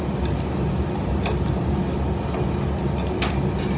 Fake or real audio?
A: real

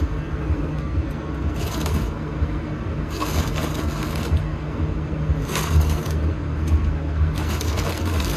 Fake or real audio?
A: fake